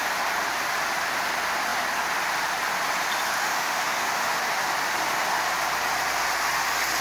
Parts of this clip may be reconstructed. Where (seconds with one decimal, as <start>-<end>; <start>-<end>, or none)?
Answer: 3.4-4.3